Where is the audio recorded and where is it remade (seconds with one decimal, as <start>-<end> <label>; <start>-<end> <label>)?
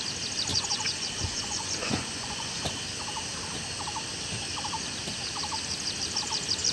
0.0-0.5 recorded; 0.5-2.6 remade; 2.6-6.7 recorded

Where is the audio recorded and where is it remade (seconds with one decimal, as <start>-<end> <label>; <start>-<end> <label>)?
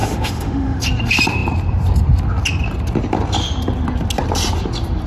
0.0-0.8 remade; 0.8-5.1 recorded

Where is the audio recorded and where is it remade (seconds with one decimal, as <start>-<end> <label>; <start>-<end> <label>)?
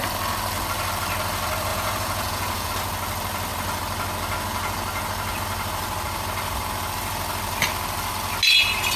0.0-1.7 recorded; 1.7-2.7 remade; 2.7-9.0 recorded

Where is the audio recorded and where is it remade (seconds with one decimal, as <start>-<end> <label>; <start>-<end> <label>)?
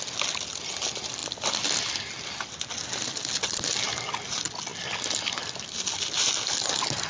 0.0-7.1 recorded